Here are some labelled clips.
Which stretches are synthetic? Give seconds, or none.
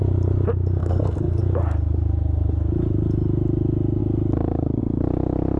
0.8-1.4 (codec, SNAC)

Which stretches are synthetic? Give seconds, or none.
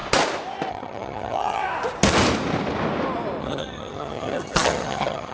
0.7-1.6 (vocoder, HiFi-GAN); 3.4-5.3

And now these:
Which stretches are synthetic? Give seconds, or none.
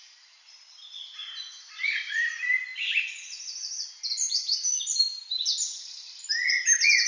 none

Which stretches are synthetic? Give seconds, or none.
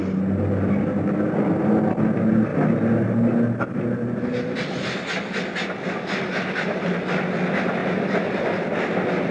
7.8-8.4 (vocoder, BigVGAN v2)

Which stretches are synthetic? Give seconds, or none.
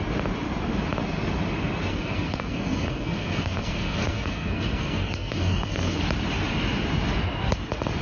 1.9-6.0 (codec, SNAC)